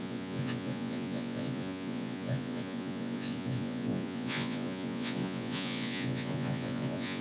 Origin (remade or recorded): remade